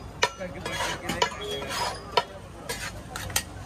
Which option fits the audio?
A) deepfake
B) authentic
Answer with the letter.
B